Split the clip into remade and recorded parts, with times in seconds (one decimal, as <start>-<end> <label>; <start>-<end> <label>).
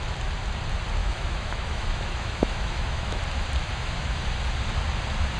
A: 0.0-1.0 recorded; 1.0-3.2 remade; 3.2-3.6 recorded; 3.6-4.2 remade; 4.2-5.4 recorded